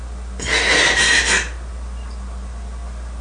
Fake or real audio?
real